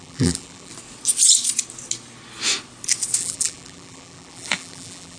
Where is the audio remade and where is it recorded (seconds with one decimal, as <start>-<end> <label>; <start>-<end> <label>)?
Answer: 0.0-0.7 remade; 0.7-3.2 recorded; 3.2-5.2 remade